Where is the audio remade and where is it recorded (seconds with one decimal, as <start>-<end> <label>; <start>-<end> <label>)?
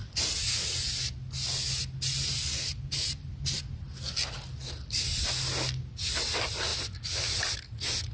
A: 0.0-8.1 recorded